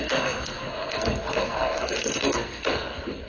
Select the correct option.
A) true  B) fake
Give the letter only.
B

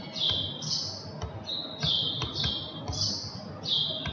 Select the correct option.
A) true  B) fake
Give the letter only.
A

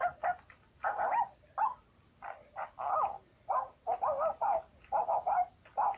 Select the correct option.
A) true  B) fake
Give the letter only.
A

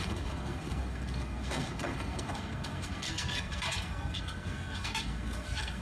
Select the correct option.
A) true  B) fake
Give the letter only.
B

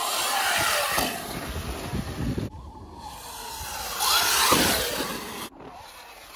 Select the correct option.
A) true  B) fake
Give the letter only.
A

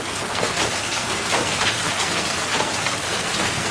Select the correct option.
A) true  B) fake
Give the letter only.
B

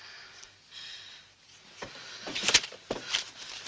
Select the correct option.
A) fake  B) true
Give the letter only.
B